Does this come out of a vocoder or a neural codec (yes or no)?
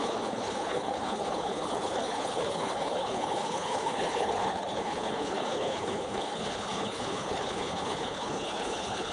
yes